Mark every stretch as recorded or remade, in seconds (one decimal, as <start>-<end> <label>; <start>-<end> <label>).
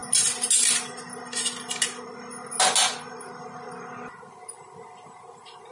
0.0-5.7 recorded